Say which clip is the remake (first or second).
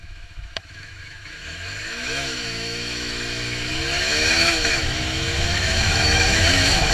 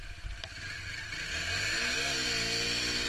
first